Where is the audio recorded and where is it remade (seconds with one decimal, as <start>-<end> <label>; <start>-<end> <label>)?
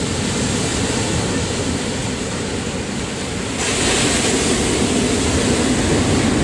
0.0-6.4 recorded